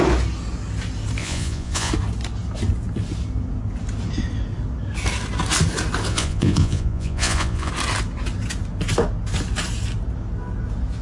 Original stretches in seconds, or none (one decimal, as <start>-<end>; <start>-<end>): 0.0-1.2; 1.9-6.1; 7.7-11.0